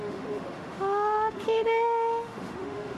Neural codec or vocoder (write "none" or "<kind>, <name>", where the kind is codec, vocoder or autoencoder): autoencoder, DAC-VAE